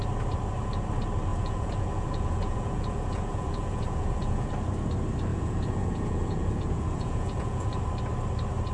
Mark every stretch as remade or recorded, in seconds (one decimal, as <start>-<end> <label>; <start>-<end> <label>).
0.0-1.3 recorded; 1.3-4.5 remade; 4.5-5.3 recorded; 5.3-7.8 remade; 7.8-8.7 recorded